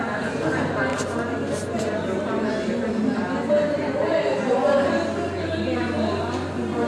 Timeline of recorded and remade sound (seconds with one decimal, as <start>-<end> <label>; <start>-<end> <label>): 0.0-6.9 recorded